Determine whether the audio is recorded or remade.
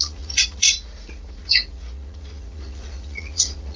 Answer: remade